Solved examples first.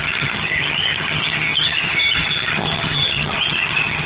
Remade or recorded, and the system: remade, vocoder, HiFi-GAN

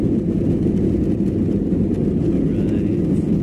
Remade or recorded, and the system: recorded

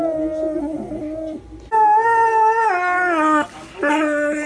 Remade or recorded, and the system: recorded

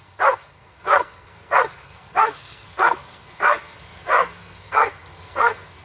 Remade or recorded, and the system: remade, codec, SNAC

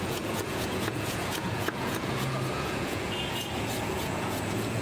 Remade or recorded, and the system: remade, vocoder, Vocos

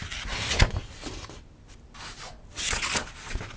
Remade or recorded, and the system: recorded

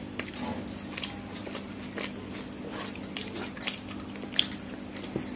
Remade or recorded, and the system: recorded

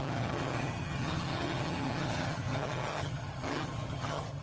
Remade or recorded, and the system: remade, vocoder, HiFi-GAN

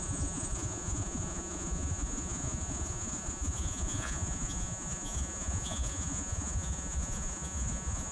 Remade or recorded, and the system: remade, vocoder, Vocos